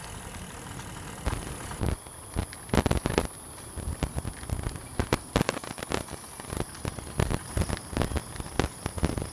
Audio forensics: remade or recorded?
recorded